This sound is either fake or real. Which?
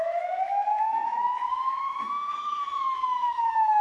fake